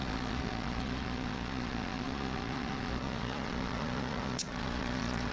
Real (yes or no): no